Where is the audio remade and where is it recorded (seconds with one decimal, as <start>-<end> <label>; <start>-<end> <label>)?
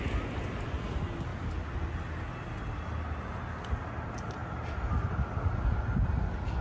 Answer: 0.0-6.6 recorded